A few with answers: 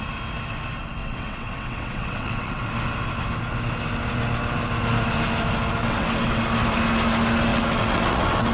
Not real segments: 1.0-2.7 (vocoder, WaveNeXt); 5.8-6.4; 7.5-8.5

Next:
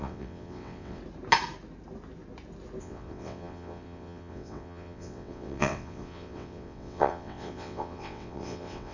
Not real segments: 0.0-1.0 (vocoder, WaveNeXt); 2.8-8.9

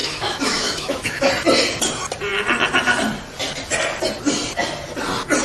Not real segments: 0.0-1.3 (autoencoder, DAC-VAE)

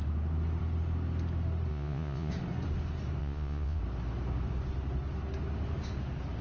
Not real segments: 1.7-2.3 (vocoder, Vocos); 3.2-3.8

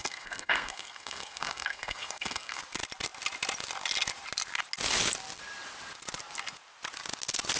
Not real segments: 0.0-2.6 (codec, SNAC)

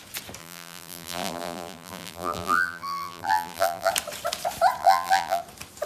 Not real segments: 0.4-3.9 (vocoder, BigVGAN v2); 4.8-5.4